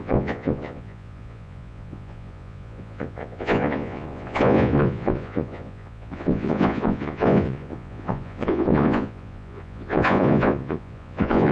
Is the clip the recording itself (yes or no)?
no